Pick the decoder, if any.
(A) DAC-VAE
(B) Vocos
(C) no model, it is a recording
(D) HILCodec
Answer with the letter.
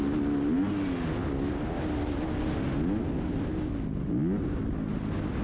C